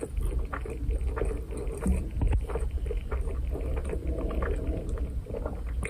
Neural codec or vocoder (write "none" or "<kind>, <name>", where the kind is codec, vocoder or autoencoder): none